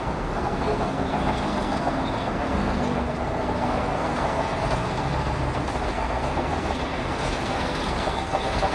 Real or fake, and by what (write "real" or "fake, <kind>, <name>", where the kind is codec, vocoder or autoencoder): fake, codec, SNAC